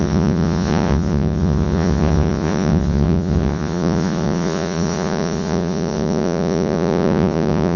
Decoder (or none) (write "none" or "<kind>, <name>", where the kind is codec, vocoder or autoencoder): vocoder, Vocos